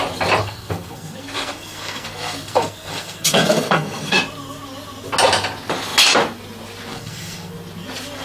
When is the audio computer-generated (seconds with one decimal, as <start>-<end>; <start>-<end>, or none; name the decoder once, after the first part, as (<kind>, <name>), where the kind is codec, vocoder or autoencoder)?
0.4-4.2 (codec, SNAC); 6.9-7.5